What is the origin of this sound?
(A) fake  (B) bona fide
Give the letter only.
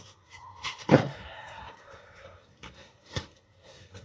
A